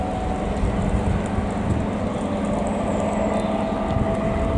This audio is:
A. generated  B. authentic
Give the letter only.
B